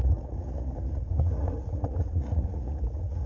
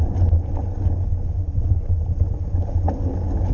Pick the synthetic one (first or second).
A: first